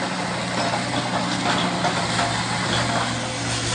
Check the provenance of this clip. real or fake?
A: real